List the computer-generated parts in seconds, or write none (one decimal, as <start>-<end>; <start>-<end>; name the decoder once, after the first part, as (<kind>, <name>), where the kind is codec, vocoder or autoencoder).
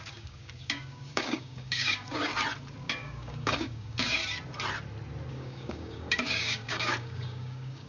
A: 0.0-2.3 (codec, DAC); 2.8-4.2; 5.3-7.9